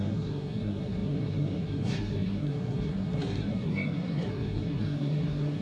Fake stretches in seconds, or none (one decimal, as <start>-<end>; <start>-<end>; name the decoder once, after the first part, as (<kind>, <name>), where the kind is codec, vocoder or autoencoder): 0.0-5.6 (codec, SNAC)